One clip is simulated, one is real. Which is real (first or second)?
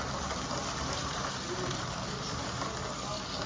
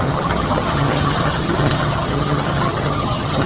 first